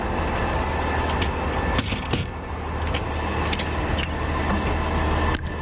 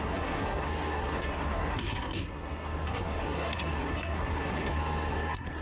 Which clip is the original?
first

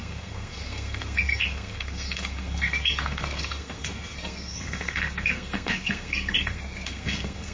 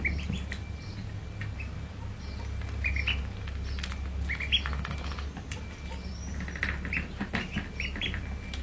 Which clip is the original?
second